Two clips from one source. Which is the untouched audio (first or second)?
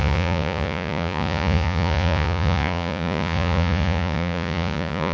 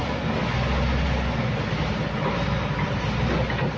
second